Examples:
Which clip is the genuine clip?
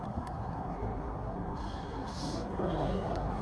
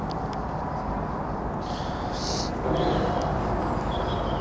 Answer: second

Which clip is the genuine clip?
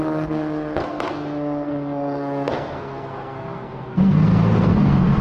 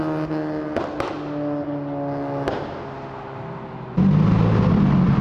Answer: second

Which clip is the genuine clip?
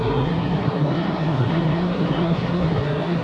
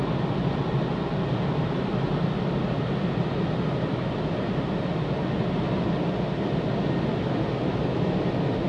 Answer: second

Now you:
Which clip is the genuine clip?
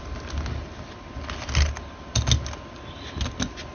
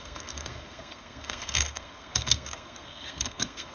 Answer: first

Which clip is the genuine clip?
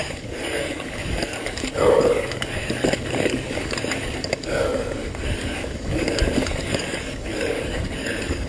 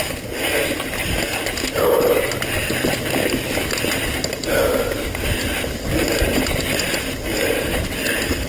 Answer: second